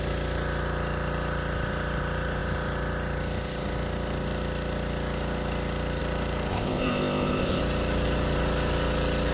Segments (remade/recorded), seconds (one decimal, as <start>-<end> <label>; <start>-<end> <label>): 0.0-6.5 recorded; 6.5-7.6 remade; 7.6-9.3 recorded